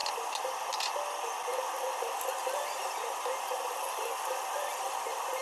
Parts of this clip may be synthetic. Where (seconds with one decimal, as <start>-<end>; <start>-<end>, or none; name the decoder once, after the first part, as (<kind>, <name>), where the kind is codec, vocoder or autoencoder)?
none